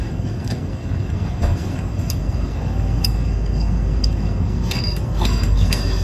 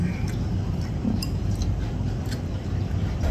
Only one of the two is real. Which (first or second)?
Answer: second